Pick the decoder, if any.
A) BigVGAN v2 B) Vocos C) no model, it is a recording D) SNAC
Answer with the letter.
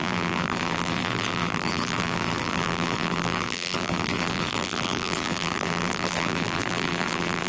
A